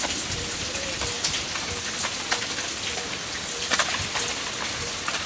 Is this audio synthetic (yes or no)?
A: no